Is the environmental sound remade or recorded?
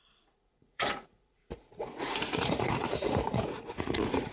remade